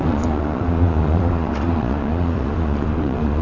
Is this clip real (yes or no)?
no